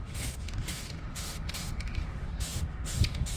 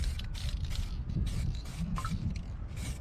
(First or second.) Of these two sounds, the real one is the second